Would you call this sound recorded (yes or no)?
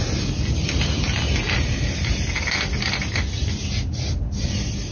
yes